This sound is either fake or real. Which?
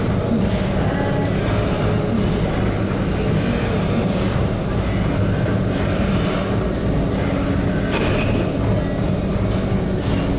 real